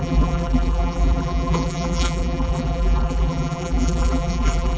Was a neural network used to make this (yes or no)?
yes